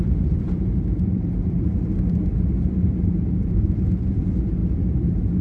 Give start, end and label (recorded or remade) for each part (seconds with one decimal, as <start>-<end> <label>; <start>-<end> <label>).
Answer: 0.0-5.4 remade